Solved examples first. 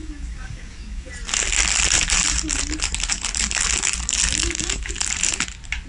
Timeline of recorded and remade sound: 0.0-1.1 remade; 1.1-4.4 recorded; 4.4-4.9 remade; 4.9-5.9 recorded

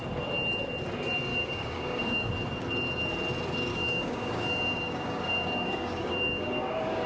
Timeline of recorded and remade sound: 0.0-1.3 recorded; 1.3-2.3 remade; 2.3-3.7 recorded; 3.7-7.1 remade

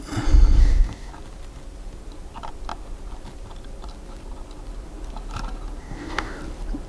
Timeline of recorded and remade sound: 0.0-0.6 recorded; 0.6-1.1 remade; 1.1-5.8 recorded; 5.8-6.4 remade; 6.4-6.9 recorded

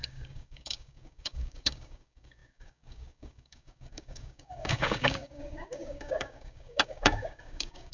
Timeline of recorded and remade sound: 0.0-7.9 remade

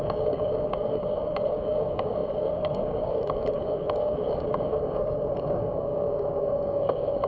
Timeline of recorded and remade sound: 0.0-7.3 remade

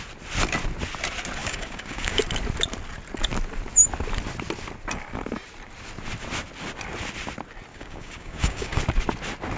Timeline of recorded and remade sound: 0.0-1.4 recorded; 1.4-2.2 remade; 2.2-7.7 recorded; 7.7-8.8 remade; 8.8-9.6 recorded

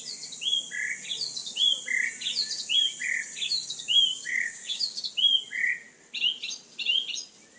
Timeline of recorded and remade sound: 0.0-4.1 recorded; 4.1-5.0 remade; 5.0-7.6 recorded